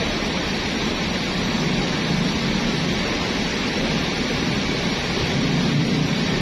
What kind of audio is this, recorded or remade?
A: remade